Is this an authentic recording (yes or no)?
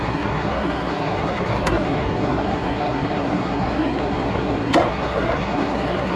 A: no